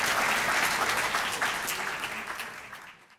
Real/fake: real